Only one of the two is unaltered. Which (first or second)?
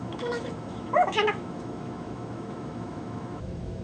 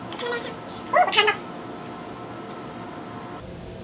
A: second